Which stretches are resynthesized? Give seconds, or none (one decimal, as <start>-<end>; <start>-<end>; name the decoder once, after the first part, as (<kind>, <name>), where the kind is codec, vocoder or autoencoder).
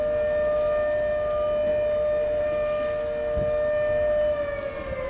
none